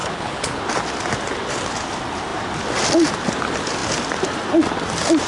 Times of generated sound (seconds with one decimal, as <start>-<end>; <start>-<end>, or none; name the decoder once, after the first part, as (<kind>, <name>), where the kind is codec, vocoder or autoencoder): 0.0-0.6 (codec, HILCodec)